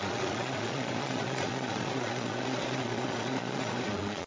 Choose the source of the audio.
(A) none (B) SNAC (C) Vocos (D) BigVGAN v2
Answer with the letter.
C